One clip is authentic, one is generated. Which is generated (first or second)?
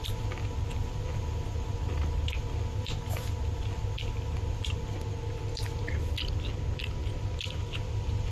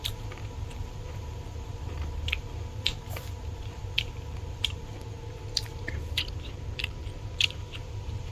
second